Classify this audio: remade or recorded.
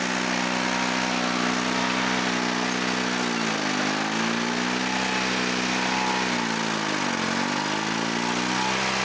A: recorded